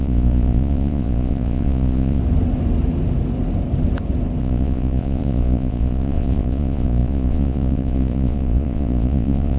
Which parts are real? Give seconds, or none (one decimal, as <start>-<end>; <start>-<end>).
2.2-4.4